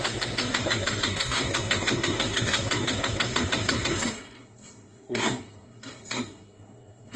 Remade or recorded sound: remade